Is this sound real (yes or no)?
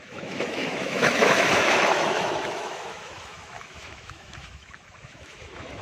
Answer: no